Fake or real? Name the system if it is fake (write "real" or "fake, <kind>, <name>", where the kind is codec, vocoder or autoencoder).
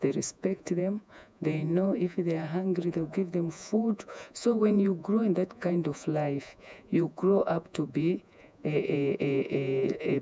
fake, vocoder, Vocos